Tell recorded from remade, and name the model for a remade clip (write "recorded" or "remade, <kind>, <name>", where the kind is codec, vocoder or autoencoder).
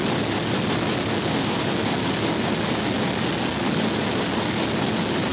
recorded